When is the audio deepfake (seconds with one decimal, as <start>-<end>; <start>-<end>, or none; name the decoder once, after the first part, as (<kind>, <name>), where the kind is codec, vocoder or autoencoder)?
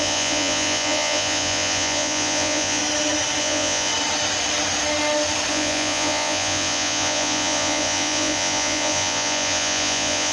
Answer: 0.0-2.8 (vocoder, Vocos); 3.4-3.9; 5.5-10.3